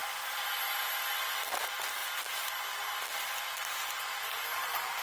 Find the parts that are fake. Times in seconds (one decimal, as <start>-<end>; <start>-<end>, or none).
0.0-2.0